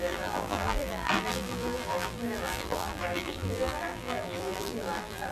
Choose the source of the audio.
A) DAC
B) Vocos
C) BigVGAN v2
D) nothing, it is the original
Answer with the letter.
C